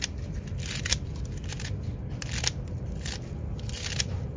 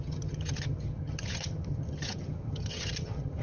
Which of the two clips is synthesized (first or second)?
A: second